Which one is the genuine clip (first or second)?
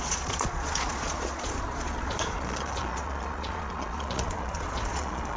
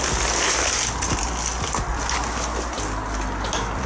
second